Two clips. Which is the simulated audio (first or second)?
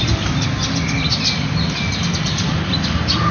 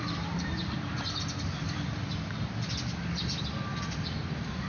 second